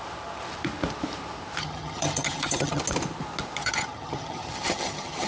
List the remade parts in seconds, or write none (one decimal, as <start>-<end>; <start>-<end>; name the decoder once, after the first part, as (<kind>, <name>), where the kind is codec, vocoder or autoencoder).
1.6-2.8 (vocoder, HiFi-GAN); 3.6-5.3